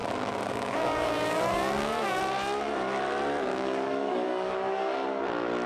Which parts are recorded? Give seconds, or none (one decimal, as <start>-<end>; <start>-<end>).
2.2-3.5; 5.2-5.7